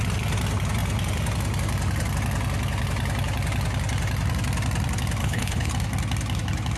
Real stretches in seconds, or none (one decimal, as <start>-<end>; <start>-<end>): 0.0-5.2; 5.7-6.8